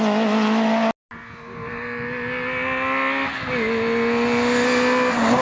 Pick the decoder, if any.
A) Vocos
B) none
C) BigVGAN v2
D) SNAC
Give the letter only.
B